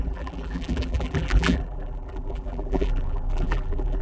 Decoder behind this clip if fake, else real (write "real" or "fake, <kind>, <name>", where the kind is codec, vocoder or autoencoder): fake, vocoder, BigVGAN v2